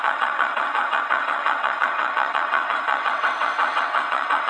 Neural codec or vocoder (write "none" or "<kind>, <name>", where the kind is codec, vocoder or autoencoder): vocoder, WaveNeXt